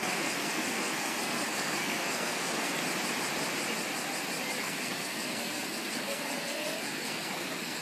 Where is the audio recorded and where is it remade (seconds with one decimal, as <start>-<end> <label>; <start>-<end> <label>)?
0.0-2.8 remade; 2.8-4.6 recorded; 4.6-7.8 remade